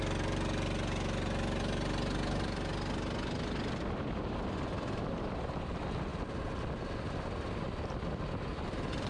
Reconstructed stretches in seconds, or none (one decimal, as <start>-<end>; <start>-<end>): none